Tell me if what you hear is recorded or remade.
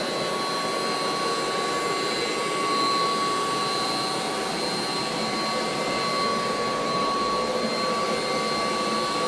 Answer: recorded